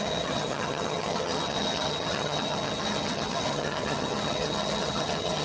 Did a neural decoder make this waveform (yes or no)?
yes